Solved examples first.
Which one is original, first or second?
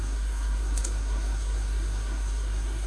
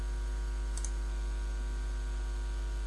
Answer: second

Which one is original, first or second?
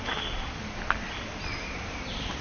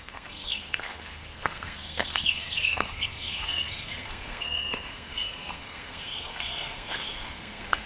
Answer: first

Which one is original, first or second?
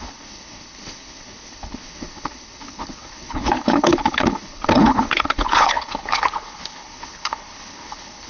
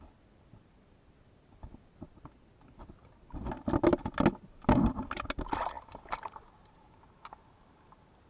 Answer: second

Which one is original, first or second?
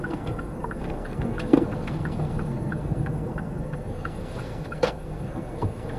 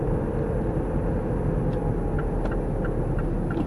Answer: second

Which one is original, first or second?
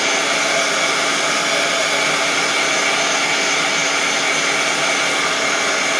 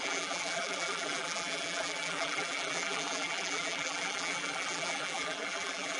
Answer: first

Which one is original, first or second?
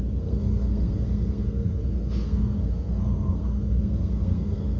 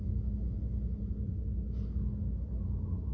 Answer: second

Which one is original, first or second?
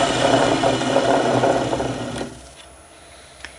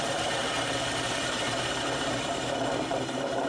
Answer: first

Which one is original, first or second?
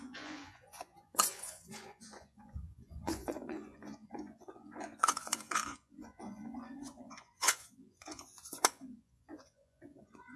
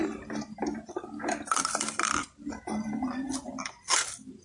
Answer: second